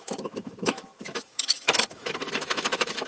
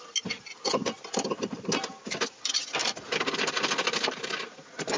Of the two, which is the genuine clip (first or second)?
second